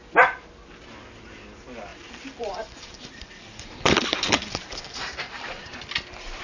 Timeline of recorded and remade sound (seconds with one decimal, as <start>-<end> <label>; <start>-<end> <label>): 0.0-1.9 recorded; 1.9-5.7 remade; 5.7-6.4 recorded